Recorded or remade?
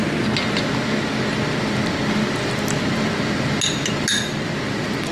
recorded